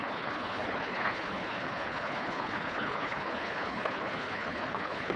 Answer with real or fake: fake